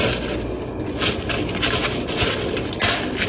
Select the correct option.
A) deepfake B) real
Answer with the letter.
B